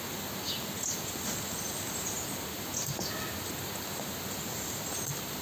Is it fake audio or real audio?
real